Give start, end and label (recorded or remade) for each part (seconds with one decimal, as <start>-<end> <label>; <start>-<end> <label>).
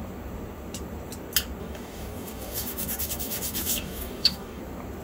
0.0-1.6 recorded; 1.6-4.6 remade; 4.6-5.0 recorded